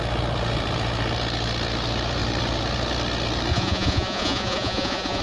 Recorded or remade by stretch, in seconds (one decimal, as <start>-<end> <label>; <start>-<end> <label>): 0.0-3.5 recorded; 3.5-5.2 remade